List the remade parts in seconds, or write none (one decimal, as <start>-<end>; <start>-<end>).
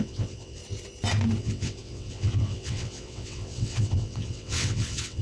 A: 0.0-0.6; 1.4-5.2